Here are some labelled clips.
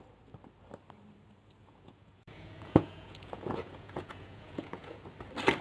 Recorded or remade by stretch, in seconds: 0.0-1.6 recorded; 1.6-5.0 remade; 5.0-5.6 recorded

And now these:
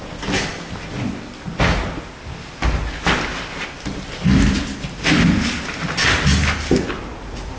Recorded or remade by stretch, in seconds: 0.0-7.1 recorded; 7.1-7.6 remade

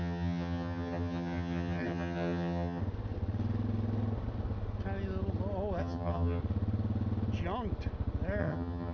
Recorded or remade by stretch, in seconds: 0.0-2.8 remade; 2.8-5.8 recorded; 5.8-6.4 remade; 6.4-8.4 recorded; 8.4-8.9 remade

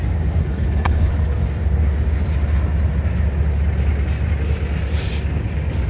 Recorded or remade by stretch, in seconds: 0.0-0.4 recorded; 0.4-1.1 remade; 1.1-5.9 recorded

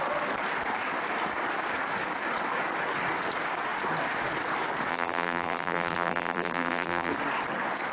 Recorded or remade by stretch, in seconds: 0.0-4.9 recorded; 4.9-7.1 remade; 7.1-7.9 recorded